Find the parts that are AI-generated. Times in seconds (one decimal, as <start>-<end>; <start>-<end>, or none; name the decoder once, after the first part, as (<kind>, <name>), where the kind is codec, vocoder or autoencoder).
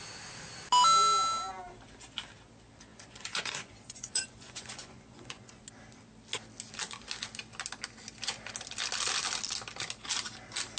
2.9-5.6 (vocoder, Vocos)